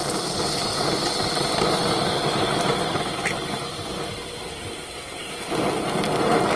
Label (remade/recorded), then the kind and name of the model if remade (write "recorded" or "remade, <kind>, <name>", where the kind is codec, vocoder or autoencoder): recorded